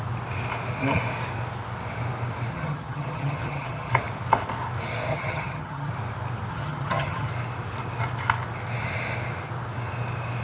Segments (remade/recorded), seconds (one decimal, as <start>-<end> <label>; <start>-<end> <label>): 0.0-2.5 recorded; 2.5-3.9 remade; 3.9-5.1 recorded; 5.1-5.9 remade; 5.9-6.5 recorded; 6.5-7.3 remade; 7.3-10.4 recorded